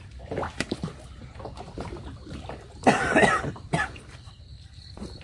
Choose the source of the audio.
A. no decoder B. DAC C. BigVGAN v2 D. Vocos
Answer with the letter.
C